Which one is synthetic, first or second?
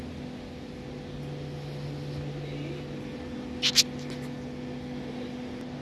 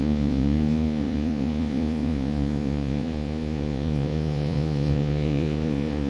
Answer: second